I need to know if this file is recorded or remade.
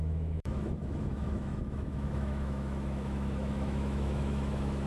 remade